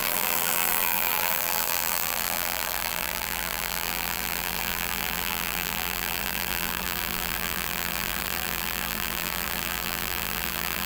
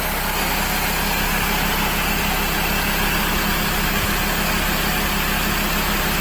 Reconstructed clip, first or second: first